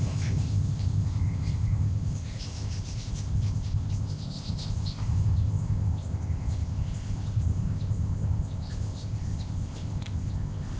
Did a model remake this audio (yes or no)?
yes